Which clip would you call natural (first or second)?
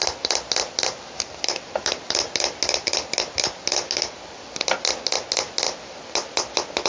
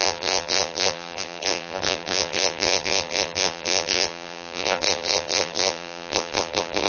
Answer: first